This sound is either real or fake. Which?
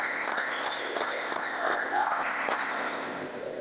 fake